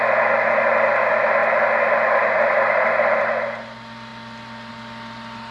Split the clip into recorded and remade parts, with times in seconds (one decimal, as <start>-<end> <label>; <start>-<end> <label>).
0.0-5.5 recorded

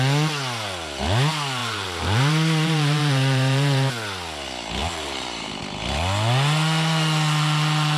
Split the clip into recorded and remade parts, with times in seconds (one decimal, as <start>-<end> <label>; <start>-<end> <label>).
0.0-1.6 recorded; 1.6-3.9 remade; 3.9-4.8 recorded; 4.8-5.6 remade; 5.6-8.0 recorded